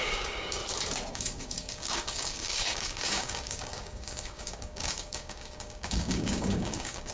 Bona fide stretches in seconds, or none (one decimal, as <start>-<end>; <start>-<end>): 0.6-1.1